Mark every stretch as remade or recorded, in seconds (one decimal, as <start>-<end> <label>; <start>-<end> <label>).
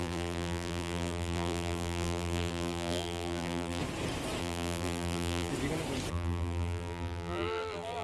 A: 0.0-3.8 remade; 3.8-4.4 recorded; 4.4-5.5 remade; 5.5-6.1 recorded; 6.1-8.0 remade